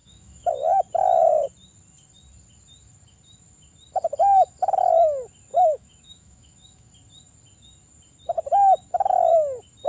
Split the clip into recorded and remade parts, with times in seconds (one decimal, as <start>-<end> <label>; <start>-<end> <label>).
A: 0.0-0.5 remade; 0.5-5.5 recorded; 5.5-6.9 remade; 6.9-9.9 recorded

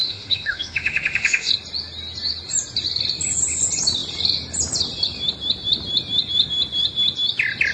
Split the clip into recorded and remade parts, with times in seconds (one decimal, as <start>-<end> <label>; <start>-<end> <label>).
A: 0.0-1.5 remade; 1.5-7.7 recorded

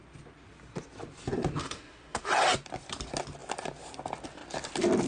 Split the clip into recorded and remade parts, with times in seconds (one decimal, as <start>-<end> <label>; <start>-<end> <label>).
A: 0.0-1.6 recorded; 1.6-2.3 remade; 2.3-5.1 recorded

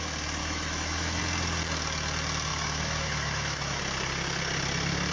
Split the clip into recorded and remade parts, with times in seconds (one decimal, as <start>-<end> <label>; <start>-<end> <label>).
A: 0.0-0.4 recorded; 0.4-1.2 remade; 1.2-2.5 recorded; 2.5-3.8 remade; 3.8-5.1 recorded

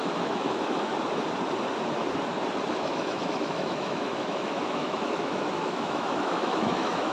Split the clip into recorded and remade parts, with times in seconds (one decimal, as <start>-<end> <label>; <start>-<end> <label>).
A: 0.0-0.9 remade; 0.9-2.7 recorded; 2.7-7.1 remade